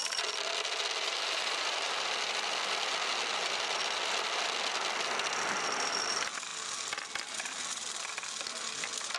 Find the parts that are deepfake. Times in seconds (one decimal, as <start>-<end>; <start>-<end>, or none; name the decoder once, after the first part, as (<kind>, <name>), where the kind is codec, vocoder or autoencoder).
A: none